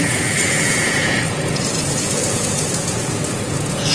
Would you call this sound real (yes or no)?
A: no